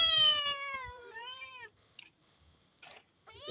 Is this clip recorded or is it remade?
remade